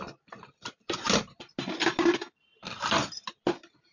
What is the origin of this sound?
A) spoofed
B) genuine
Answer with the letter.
B